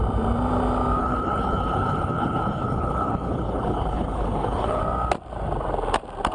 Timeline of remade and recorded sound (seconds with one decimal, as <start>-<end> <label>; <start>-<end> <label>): 0.0-1.0 recorded; 1.0-4.8 remade; 4.8-6.3 recorded